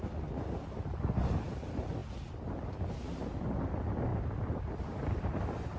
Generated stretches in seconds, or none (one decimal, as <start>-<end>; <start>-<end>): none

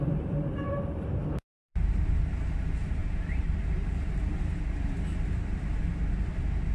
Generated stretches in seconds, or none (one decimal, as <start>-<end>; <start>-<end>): 0.0-6.7

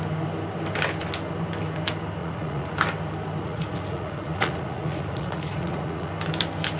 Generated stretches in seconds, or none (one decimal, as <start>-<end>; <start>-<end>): 2.2-2.7; 3.4-6.1